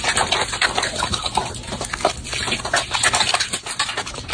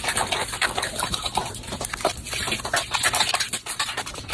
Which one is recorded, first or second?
first